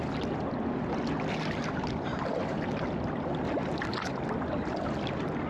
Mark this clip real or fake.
real